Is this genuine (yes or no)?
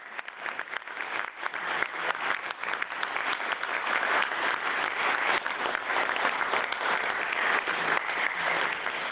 yes